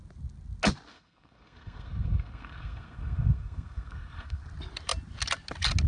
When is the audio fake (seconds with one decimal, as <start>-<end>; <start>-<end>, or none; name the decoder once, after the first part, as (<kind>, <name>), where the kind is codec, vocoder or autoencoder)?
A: 0.9-4.4 (codec, SNAC)